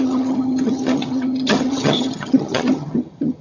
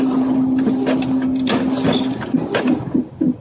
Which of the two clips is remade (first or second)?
first